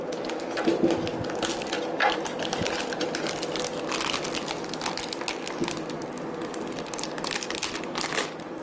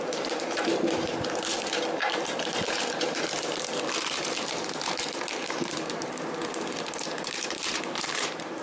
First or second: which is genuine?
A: first